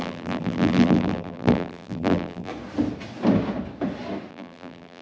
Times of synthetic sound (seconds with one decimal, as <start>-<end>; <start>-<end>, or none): 0.0-2.5; 4.3-5.0